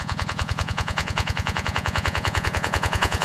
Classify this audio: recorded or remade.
remade